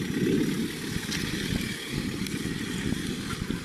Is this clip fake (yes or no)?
no